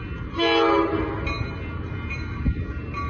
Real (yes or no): yes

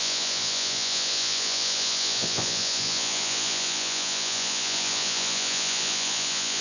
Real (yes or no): no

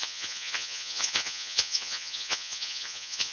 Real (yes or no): no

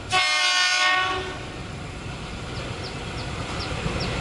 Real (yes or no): yes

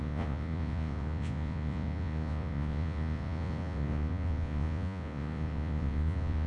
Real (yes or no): no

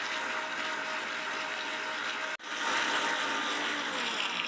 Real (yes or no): yes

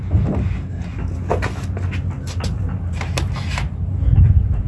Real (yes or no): yes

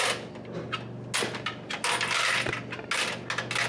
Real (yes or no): yes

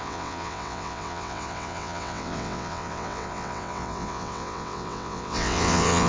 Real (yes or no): no